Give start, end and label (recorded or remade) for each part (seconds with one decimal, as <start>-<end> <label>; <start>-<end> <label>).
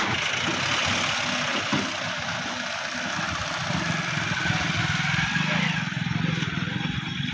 0.0-7.3 recorded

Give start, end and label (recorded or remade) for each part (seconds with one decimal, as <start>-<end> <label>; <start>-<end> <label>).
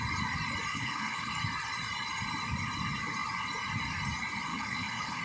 0.0-0.7 recorded; 0.7-1.3 remade; 1.3-4.5 recorded; 4.5-5.2 remade